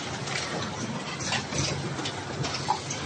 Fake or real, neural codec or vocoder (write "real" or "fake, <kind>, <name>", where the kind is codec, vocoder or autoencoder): real